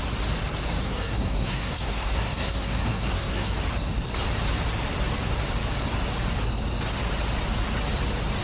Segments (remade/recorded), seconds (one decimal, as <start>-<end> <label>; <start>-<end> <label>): 0.0-0.8 recorded; 0.8-3.5 remade; 3.5-8.4 recorded